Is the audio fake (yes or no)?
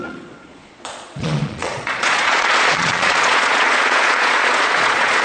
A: yes